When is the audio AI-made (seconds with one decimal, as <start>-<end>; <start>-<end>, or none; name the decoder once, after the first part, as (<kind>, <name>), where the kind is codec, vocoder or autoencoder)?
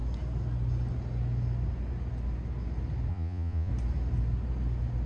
3.1-3.7 (vocoder, Vocos)